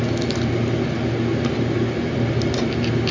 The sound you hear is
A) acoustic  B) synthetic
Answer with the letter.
A